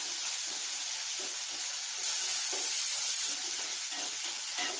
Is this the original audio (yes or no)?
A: yes